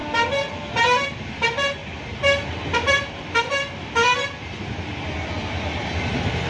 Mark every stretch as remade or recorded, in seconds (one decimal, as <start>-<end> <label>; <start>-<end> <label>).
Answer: 0.0-1.8 recorded; 1.8-4.7 remade; 4.7-6.5 recorded